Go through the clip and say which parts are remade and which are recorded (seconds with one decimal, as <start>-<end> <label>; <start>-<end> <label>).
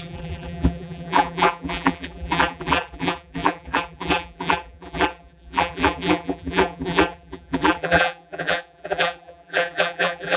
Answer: 0.0-10.4 remade